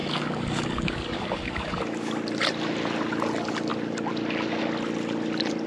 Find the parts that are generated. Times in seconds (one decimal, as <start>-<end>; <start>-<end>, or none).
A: 0.0-2.1